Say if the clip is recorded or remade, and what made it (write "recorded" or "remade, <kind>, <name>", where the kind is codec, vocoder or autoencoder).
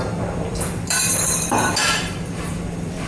remade, vocoder, BigVGAN v2